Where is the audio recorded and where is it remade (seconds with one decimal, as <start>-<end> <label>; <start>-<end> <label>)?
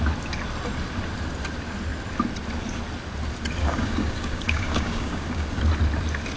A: 0.0-3.6 recorded; 3.6-5.6 remade; 5.6-6.4 recorded